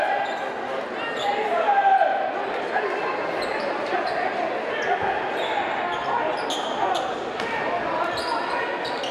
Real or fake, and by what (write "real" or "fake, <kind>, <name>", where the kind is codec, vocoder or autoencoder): real